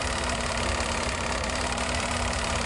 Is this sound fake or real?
fake